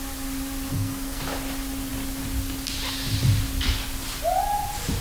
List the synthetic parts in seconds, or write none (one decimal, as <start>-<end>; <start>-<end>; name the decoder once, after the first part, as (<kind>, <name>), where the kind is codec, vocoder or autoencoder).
0.7-1.2 (codec, SNAC)